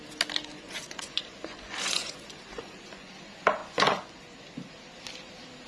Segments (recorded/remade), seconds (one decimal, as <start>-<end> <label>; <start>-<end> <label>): 0.0-0.5 recorded; 0.5-3.1 remade; 3.1-3.6 recorded; 3.6-4.2 remade; 4.2-5.7 recorded